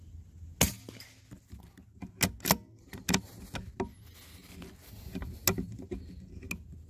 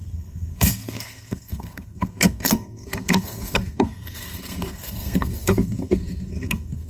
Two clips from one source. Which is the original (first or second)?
first